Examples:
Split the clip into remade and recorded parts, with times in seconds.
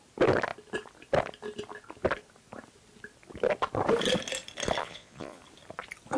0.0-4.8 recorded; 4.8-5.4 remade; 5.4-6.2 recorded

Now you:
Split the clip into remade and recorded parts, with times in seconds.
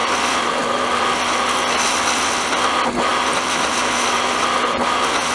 0.0-1.0 remade; 1.0-3.1 recorded; 3.1-3.8 remade; 3.8-5.3 recorded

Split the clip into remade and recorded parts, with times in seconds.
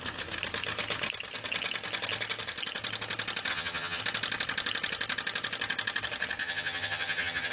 0.0-3.5 recorded; 3.5-4.0 remade; 4.0-6.4 recorded; 6.4-7.5 remade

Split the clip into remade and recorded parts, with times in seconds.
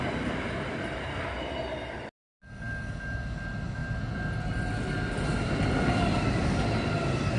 0.0-7.4 recorded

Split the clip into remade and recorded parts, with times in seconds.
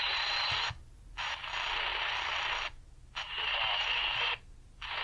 0.0-5.0 recorded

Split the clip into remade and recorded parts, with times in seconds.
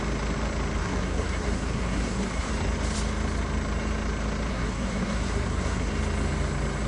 0.0-0.8 recorded; 0.8-2.5 remade; 2.5-4.5 recorded; 4.5-5.9 remade; 5.9-6.9 recorded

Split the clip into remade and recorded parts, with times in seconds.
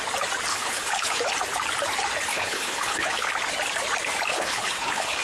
0.0-0.5 recorded; 0.5-1.2 remade; 1.2-2.3 recorded; 2.3-3.3 remade; 3.3-4.3 recorded; 4.3-5.2 remade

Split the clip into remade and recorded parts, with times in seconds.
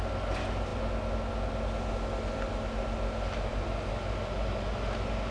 0.0-5.3 recorded